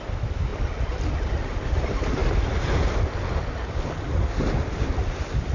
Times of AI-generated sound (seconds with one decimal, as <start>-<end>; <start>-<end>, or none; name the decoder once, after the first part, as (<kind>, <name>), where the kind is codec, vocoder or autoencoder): none